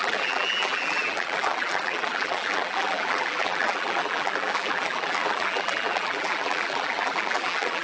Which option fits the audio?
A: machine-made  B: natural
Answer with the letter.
A